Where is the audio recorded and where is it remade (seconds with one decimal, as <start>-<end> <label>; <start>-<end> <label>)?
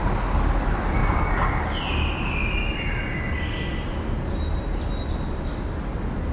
0.0-6.3 recorded